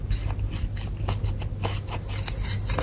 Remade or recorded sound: recorded